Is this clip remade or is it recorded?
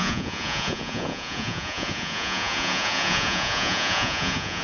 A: remade